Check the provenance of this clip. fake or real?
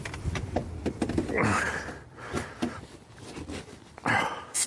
fake